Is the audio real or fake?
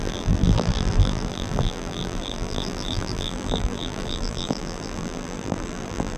fake